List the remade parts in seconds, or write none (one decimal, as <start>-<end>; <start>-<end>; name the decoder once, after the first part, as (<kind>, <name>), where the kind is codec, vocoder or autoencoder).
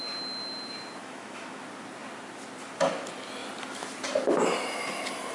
1.0-1.6 (autoencoder, DAC-VAE)